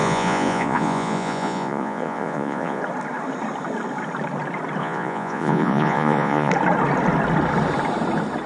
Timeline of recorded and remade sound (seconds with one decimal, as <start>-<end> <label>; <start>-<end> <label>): 0.0-2.8 remade; 2.8-4.8 recorded; 4.8-6.5 remade; 6.5-8.5 recorded